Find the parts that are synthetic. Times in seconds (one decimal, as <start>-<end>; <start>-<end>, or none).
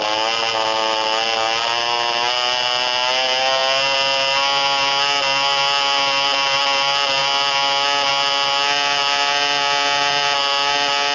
none